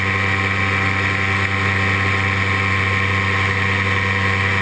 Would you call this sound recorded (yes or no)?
yes